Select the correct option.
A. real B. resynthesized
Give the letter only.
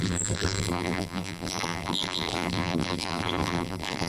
B